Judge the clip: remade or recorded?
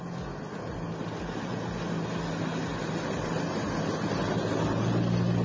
recorded